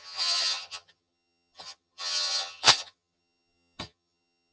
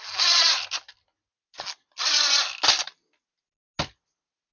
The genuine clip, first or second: second